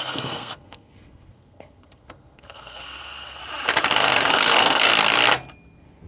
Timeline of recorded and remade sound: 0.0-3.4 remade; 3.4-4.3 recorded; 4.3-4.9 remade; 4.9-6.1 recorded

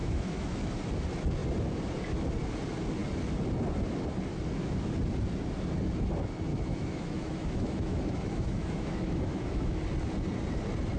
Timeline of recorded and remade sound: 0.0-0.7 remade; 0.7-6.5 recorded; 6.5-9.8 remade; 9.8-11.0 recorded

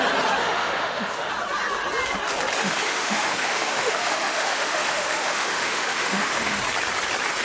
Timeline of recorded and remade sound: 0.0-0.4 recorded; 0.4-1.3 remade; 1.3-2.6 recorded; 2.6-6.6 remade; 6.6-7.4 recorded